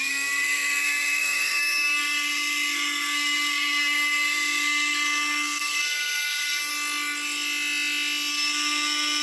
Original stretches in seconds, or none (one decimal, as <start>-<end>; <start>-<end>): 6.7-8.3